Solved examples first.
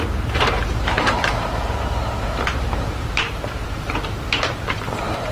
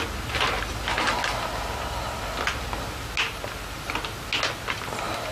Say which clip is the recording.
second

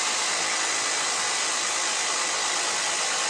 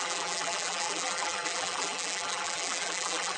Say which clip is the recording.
first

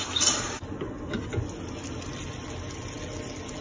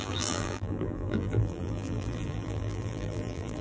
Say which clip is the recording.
first